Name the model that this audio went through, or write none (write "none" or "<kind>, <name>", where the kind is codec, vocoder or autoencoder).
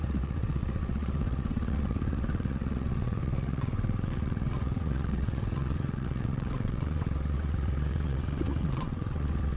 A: vocoder, WaveNeXt